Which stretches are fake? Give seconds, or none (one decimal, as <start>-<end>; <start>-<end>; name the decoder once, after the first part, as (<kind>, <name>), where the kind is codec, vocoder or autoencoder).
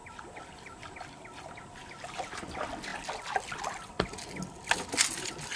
none